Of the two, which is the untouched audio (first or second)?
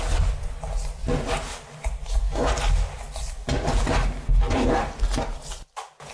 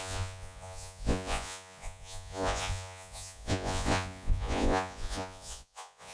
first